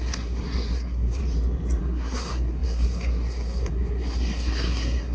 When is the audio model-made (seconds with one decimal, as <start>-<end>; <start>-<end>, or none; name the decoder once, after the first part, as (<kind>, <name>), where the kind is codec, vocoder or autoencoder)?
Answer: 0.0-1.2 (codec, SNAC); 1.8-5.1